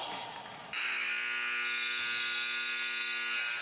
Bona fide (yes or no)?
yes